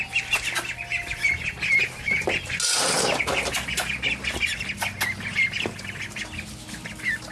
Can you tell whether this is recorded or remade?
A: recorded